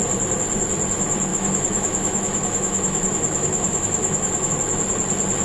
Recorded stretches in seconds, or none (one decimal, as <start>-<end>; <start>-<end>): 0.0-1.3; 4.5-5.4